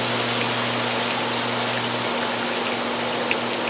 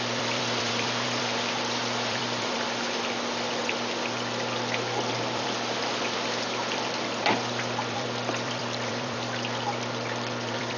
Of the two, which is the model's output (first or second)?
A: second